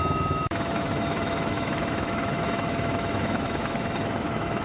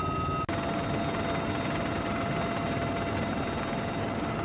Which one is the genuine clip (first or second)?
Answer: second